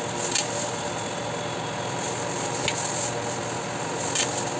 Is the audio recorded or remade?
recorded